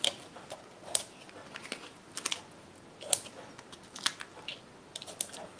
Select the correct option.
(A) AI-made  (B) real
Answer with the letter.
B